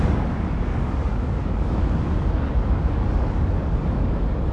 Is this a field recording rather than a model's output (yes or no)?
no